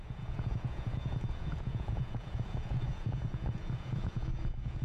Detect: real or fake fake